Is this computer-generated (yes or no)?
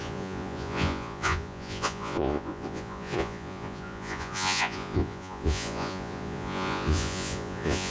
yes